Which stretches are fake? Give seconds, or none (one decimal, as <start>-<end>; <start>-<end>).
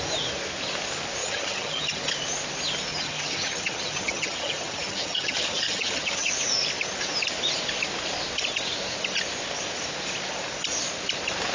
1.2-2.0; 2.9-6.3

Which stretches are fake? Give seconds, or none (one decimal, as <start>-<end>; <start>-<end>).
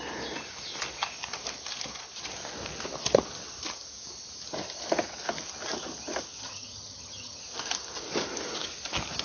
6.4-7.4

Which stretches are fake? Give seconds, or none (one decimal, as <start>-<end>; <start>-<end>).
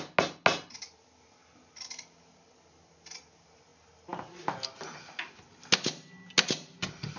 none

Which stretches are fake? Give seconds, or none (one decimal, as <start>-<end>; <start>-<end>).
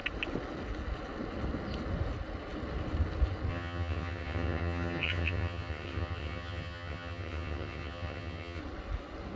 3.5-8.6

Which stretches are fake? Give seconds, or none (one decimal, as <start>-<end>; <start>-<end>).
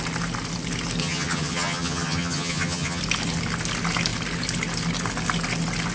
1.0-3.0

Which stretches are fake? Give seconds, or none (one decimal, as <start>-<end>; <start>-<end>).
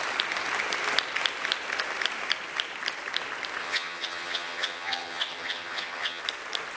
3.6-6.2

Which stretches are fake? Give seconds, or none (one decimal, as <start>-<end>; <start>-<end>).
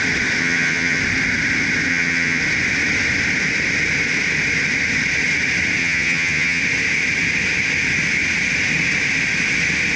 0.4-1.0; 1.9-2.4; 5.8-6.6